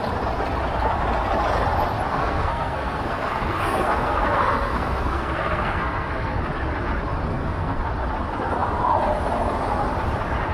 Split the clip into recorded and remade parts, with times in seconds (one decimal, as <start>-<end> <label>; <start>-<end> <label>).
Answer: 0.0-2.1 recorded; 2.1-6.4 remade; 6.4-7.3 recorded; 7.3-7.8 remade; 7.8-10.5 recorded